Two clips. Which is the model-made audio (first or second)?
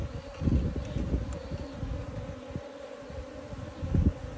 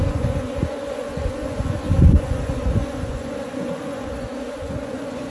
second